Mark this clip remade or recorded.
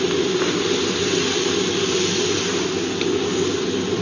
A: recorded